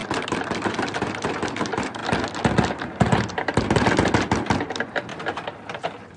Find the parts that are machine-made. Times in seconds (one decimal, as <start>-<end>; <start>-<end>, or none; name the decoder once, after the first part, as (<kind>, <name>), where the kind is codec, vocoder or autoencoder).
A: 1.0-2.0 (vocoder, BigVGAN v2); 3.3-5.1